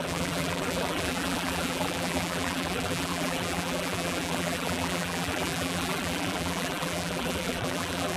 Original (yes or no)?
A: no